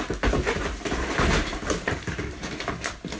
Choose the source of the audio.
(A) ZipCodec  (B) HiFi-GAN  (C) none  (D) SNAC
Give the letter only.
C